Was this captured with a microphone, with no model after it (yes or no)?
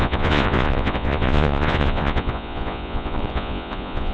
no